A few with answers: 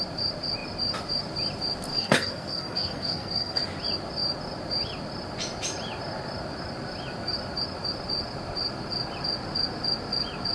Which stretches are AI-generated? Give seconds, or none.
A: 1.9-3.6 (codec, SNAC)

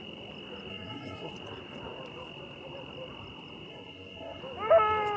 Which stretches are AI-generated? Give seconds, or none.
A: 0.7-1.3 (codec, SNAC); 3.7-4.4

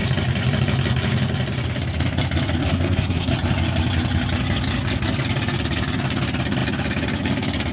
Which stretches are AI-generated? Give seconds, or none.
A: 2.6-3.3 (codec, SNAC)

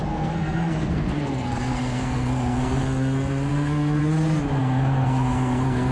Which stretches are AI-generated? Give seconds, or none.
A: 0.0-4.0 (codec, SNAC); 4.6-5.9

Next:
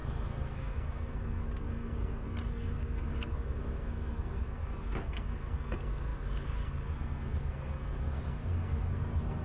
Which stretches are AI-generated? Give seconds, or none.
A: 0.0-9.4 (codec, SNAC)